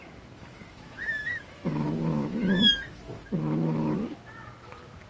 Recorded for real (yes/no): no